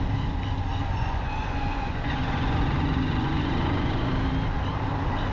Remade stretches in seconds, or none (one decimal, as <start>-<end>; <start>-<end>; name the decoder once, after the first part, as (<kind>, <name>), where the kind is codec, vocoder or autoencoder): 0.9-4.1 (vocoder, Vocos)